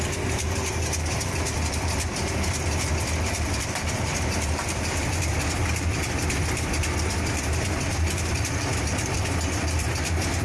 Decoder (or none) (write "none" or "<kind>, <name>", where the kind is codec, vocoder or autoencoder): vocoder, BigVGAN v2